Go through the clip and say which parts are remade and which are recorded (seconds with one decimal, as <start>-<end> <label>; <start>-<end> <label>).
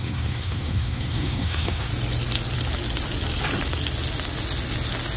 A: 0.0-1.9 remade; 1.9-5.2 recorded